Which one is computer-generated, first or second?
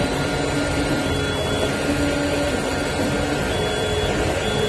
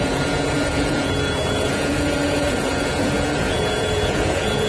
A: second